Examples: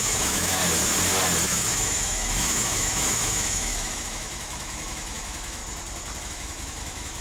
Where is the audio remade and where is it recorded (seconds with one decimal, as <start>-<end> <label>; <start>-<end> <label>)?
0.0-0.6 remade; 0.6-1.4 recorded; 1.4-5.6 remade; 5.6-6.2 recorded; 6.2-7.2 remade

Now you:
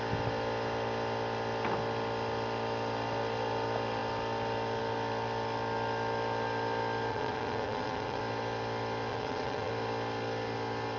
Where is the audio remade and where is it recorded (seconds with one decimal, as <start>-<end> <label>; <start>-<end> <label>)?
0.0-7.1 recorded; 7.1-8.2 remade; 8.2-9.1 recorded; 9.1-9.7 remade; 9.7-11.0 recorded

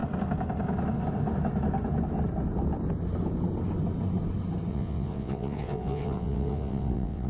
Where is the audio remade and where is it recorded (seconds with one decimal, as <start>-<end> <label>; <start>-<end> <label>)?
0.0-4.7 recorded; 4.7-7.3 remade

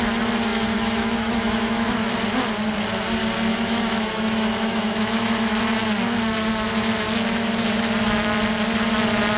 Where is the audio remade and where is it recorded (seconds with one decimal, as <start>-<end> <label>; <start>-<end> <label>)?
0.0-0.5 recorded; 0.5-2.1 remade; 2.1-3.5 recorded; 3.5-5.6 remade; 5.6-9.4 recorded

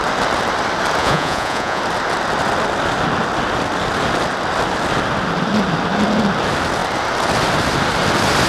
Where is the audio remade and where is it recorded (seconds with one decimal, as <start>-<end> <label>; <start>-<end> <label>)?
0.0-1.0 recorded; 1.0-1.8 remade; 1.8-8.5 recorded

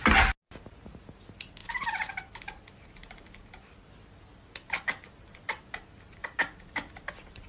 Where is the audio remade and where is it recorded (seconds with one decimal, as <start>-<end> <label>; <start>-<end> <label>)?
0.0-7.5 recorded